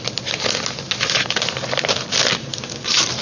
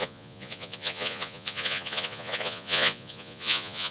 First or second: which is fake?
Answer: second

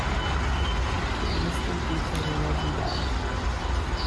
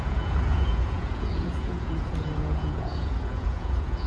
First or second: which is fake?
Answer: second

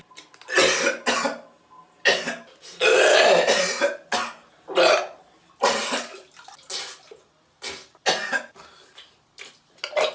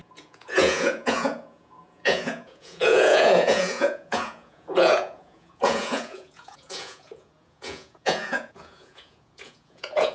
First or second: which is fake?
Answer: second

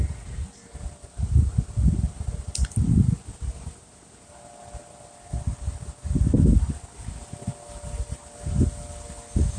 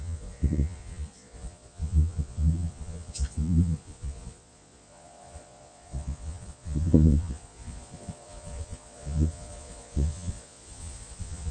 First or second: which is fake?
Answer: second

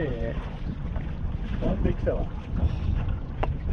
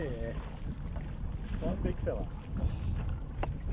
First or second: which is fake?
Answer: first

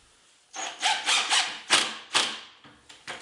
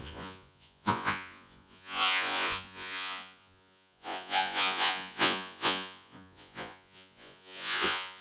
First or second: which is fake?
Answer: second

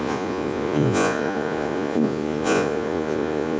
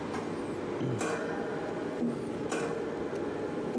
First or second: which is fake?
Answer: first